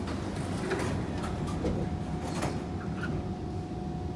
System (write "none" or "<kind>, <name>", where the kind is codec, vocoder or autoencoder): none